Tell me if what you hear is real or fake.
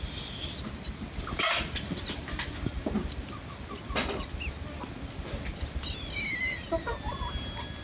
real